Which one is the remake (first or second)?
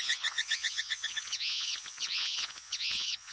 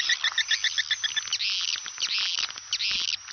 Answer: first